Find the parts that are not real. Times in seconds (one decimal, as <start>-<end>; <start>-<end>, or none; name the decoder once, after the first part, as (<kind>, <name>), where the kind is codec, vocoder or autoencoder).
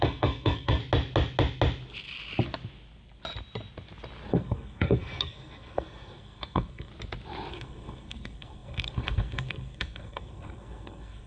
0.0-0.8 (codec, SNAC); 4.3-6.9; 7.5-11.3